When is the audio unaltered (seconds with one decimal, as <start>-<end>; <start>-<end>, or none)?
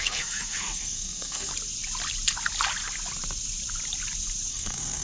1.5-4.5